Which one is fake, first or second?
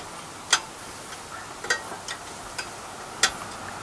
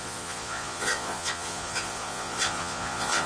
second